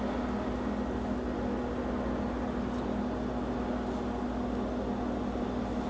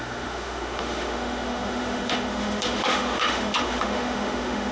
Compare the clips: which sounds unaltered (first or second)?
first